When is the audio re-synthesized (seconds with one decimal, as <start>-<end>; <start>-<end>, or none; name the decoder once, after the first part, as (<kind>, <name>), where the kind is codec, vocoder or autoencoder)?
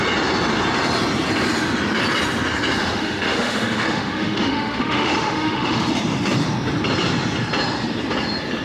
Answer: 2.8-5.9 (autoencoder, DAC-VAE)